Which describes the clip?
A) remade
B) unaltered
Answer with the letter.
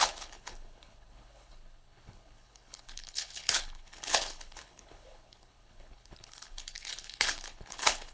A